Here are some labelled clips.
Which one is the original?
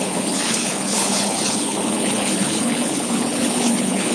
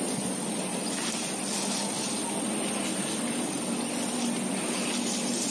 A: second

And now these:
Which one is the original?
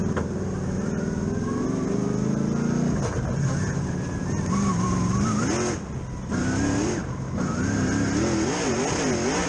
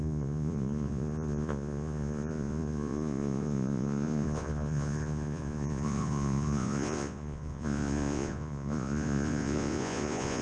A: first